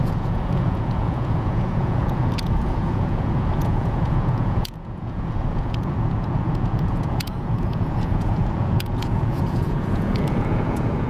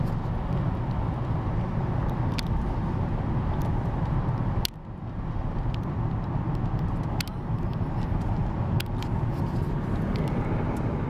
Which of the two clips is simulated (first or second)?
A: first